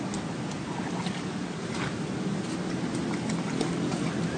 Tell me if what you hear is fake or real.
real